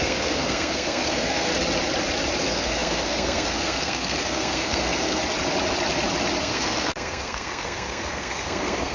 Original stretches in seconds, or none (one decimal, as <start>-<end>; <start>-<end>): 1.5-2.4; 5.2-6.4